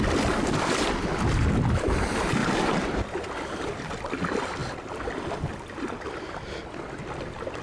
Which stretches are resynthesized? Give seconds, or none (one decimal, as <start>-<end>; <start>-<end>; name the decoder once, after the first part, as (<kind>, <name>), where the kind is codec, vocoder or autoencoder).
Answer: 2.4-3.2 (vocoder, BigVGAN v2)